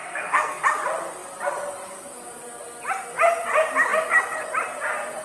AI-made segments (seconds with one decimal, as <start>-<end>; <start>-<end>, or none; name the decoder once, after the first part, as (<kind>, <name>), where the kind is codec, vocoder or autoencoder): 0.0-0.6 (codec, SNAC)